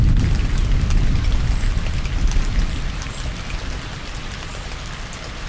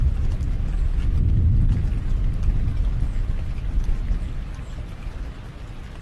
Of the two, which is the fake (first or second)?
first